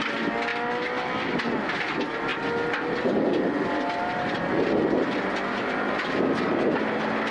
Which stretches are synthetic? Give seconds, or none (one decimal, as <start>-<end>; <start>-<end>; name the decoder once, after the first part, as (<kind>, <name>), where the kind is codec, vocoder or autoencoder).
none

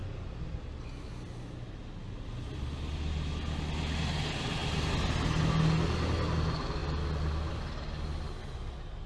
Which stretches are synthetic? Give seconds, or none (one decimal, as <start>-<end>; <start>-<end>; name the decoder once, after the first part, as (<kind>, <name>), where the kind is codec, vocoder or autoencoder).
none

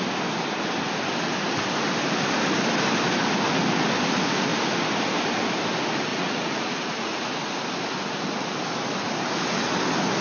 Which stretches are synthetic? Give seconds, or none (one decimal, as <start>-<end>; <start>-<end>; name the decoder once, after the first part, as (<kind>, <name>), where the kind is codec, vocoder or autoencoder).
6.1-7.3 (vocoder, Vocos)

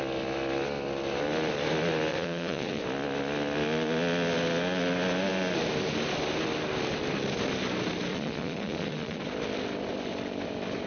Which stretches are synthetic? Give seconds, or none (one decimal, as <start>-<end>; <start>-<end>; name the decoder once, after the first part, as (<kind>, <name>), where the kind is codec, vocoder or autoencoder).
2.1-2.8 (vocoder, Vocos); 8.1-9.2

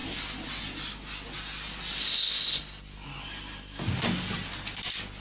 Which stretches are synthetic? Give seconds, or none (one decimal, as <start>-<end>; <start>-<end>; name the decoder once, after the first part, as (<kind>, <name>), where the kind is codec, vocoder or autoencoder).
2.0-2.8 (codec, HILCodec)